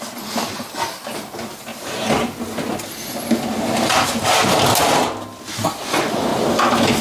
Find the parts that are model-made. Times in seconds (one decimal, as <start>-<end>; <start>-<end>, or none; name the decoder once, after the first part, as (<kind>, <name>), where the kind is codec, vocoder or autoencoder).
none